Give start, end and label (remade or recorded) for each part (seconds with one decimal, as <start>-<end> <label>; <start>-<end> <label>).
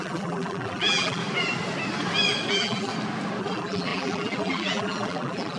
0.0-1.2 remade; 1.2-2.5 recorded; 2.5-2.9 remade; 2.9-3.4 recorded; 3.4-5.6 remade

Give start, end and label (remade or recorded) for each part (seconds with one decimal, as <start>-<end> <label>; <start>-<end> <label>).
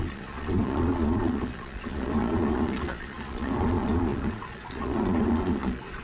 0.0-6.0 remade